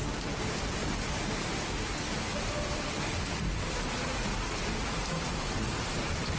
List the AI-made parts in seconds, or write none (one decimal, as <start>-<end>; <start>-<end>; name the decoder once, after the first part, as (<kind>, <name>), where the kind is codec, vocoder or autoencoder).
3.7-6.4 (vocoder, BigVGAN v2)